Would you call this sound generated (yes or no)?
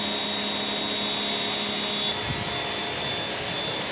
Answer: no